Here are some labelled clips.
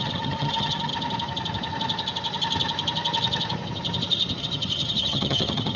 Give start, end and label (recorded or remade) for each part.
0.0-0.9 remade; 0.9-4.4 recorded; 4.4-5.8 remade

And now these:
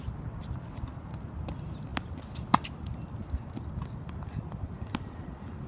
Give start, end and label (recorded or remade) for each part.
0.0-5.7 recorded

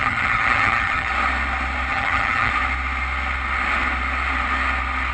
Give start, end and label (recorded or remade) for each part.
0.0-1.1 remade; 1.1-1.9 recorded; 1.9-2.5 remade; 2.5-5.1 recorded

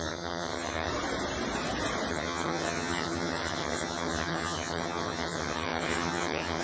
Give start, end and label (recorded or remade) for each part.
0.0-0.9 remade; 0.9-2.1 recorded; 2.1-6.6 remade

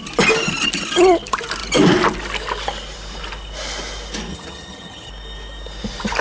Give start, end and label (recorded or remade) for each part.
0.0-4.3 recorded; 4.3-5.1 remade; 5.1-6.2 recorded

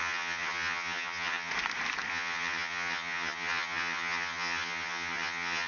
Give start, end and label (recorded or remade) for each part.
0.0-1.5 remade; 1.5-2.1 recorded; 2.1-5.7 remade

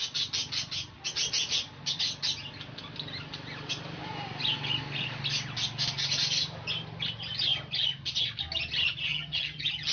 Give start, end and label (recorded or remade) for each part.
0.0-9.1 recorded; 9.1-9.9 remade